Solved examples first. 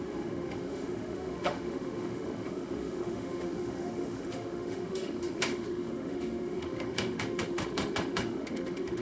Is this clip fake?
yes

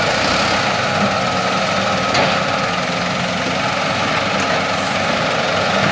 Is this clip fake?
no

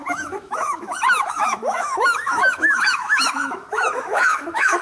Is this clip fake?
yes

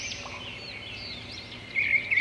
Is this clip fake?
no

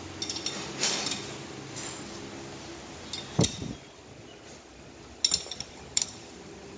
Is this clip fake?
no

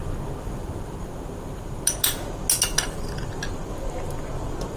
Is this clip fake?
no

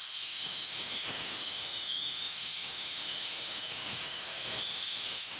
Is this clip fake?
yes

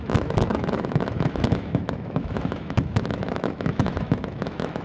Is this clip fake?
yes